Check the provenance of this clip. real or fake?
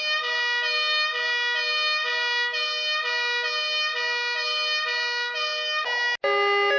real